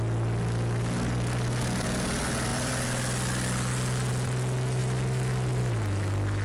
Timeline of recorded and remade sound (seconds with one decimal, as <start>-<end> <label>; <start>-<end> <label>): 0.0-6.4 recorded